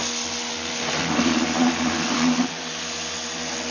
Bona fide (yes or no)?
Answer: yes